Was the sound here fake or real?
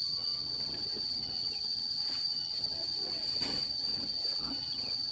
fake